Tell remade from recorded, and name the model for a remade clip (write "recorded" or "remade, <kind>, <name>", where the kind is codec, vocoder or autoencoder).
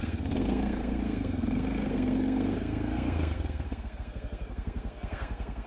remade, codec, SNAC